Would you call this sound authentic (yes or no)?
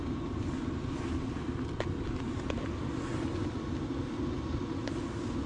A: yes